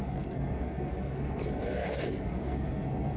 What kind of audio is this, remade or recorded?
remade